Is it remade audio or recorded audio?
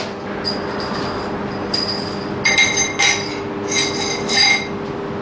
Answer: recorded